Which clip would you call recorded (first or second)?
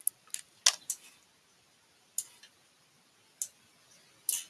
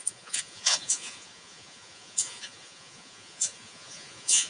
first